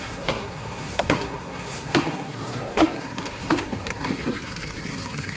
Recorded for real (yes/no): no